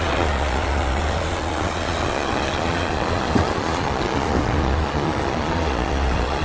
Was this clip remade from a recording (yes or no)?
yes